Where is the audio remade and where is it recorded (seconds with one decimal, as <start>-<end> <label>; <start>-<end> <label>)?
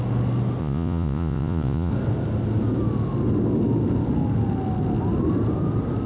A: 0.0-0.6 recorded; 0.6-1.9 remade; 1.9-6.1 recorded